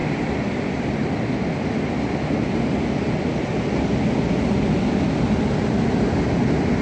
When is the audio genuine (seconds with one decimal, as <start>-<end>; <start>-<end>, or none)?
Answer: 0.0-6.8